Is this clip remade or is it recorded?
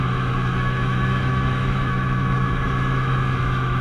remade